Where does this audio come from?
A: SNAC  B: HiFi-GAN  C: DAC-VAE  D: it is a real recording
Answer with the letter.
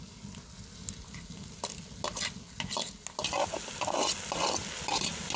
D